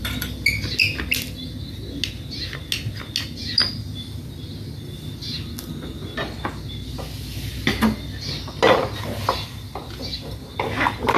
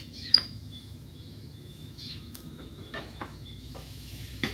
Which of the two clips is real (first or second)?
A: first